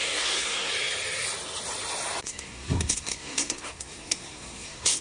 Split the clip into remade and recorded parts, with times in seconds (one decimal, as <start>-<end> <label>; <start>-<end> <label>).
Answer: 0.0-0.7 remade; 0.7-2.2 recorded; 2.2-5.0 remade